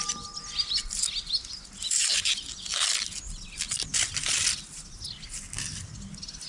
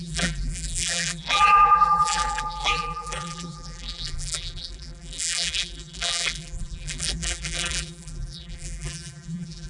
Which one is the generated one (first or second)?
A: second